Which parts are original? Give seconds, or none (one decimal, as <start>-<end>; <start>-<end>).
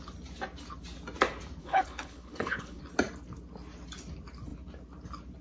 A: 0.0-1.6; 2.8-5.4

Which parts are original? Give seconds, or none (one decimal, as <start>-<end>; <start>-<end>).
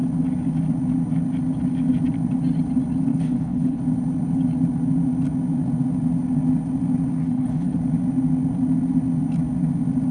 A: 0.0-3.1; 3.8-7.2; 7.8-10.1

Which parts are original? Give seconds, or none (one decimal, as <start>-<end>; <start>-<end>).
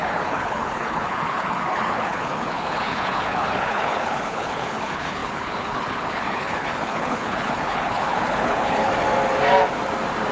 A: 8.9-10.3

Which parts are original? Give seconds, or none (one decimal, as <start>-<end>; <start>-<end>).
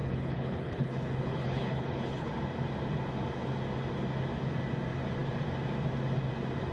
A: 2.3-6.7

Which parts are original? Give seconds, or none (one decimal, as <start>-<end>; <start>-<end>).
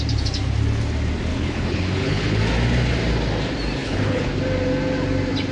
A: 0.0-1.3; 2.4-3.8; 4.3-5.5